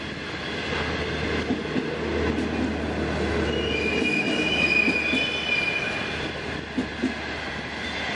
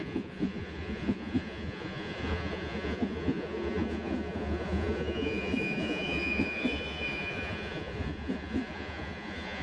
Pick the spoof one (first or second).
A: second